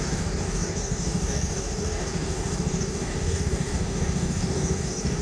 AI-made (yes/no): yes